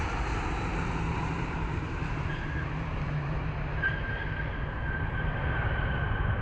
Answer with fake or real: fake